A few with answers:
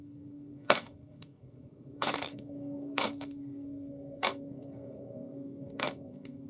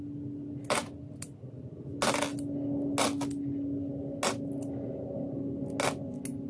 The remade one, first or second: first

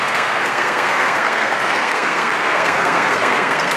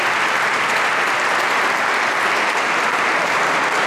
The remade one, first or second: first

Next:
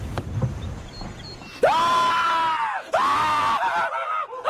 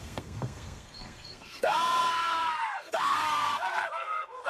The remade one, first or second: second